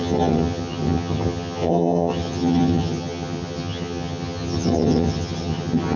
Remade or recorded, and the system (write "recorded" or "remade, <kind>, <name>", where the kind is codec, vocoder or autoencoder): remade, vocoder, HiFi-GAN